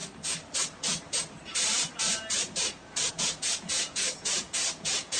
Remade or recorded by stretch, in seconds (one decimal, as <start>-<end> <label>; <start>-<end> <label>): 0.0-3.1 recorded; 3.1-5.2 remade